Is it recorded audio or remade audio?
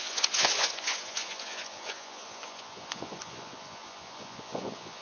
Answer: remade